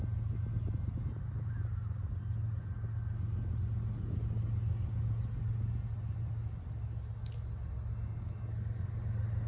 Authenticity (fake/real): real